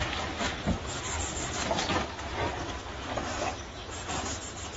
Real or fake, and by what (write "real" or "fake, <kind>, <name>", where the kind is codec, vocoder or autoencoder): real